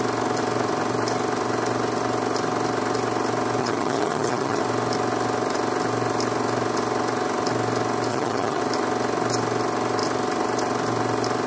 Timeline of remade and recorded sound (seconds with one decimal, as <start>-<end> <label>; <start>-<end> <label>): 0.0-3.6 recorded; 3.6-4.6 remade; 4.6-8.1 recorded; 8.1-8.6 remade; 8.6-11.5 recorded